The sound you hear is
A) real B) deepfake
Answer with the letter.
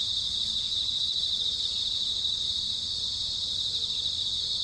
A